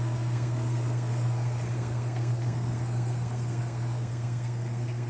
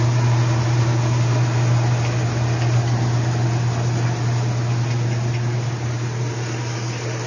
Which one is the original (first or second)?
second